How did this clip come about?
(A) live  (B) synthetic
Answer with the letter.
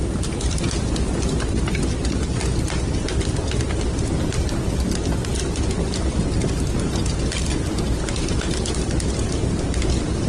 A